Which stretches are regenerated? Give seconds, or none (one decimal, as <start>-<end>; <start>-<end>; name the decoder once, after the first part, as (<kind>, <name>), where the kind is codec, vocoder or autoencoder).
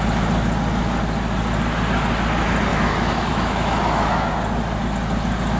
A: 2.7-4.3 (autoencoder, DAC-VAE)